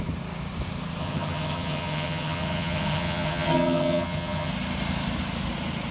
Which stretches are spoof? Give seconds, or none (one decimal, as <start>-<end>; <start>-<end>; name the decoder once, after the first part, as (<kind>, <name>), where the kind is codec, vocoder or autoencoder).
1.0-4.5 (vocoder, HiFi-GAN)